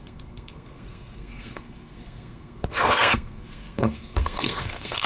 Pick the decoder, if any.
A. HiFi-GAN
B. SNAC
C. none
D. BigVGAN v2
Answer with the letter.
B